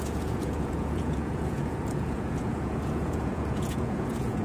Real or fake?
fake